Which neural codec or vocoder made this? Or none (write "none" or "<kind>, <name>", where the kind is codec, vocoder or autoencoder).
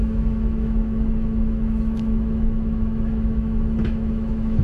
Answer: autoencoder, DAC-VAE